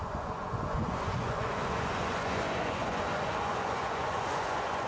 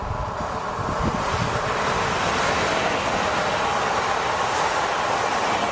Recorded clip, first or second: second